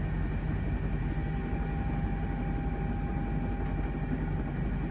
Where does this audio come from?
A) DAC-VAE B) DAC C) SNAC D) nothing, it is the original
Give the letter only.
D